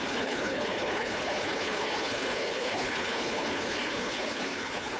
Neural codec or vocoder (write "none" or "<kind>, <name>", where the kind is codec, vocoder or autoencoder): codec, HILCodec